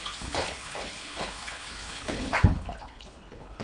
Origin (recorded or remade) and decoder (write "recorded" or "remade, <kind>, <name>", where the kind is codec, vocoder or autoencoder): remade, codec, HILCodec